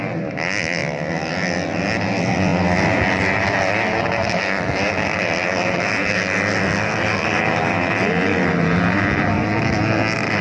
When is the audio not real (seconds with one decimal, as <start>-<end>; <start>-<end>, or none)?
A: none

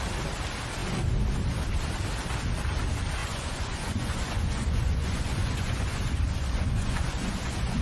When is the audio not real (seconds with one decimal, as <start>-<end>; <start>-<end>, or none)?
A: 3.2-7.8

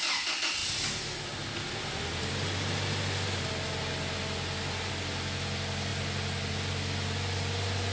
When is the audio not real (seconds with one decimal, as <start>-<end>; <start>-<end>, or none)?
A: none